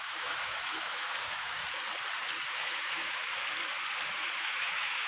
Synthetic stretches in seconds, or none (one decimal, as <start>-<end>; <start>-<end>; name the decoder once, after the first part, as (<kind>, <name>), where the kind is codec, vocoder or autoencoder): 0.0-1.6 (autoencoder, DAC-VAE); 2.5-3.2; 4.4-5.1